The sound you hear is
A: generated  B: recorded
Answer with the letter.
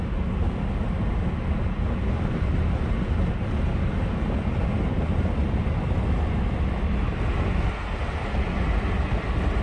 B